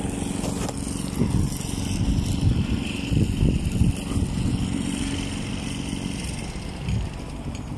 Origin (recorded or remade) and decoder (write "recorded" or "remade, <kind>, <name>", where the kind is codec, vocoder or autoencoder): recorded